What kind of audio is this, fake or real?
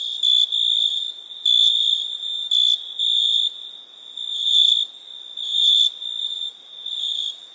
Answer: real